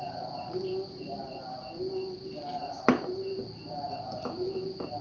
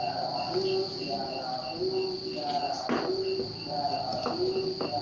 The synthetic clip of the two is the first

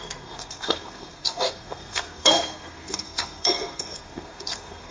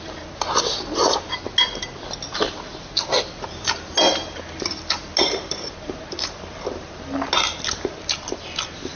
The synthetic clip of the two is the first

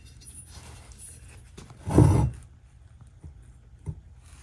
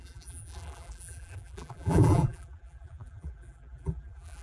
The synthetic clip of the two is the second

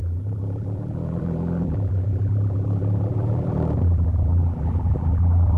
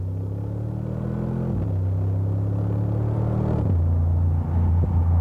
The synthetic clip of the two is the first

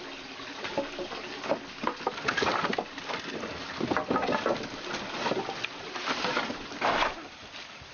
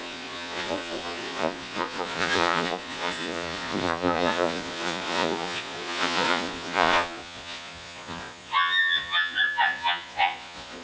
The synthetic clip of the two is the second